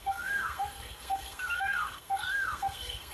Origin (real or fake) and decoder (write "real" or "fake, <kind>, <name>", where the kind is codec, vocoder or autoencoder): fake, codec, SNAC